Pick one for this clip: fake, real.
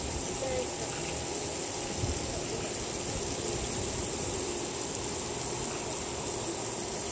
real